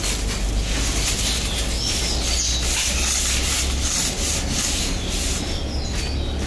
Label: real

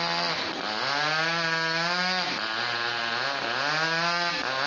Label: real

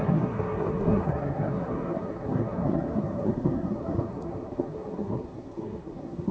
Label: fake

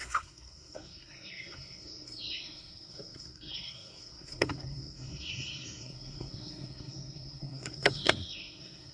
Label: fake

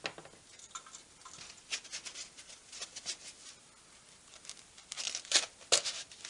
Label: real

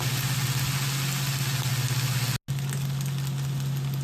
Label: real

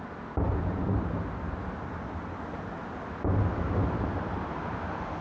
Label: real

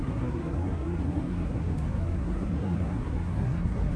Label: fake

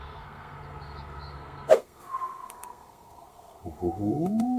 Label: fake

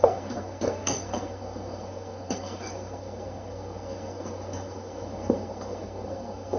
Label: fake